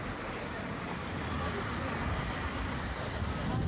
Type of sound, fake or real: real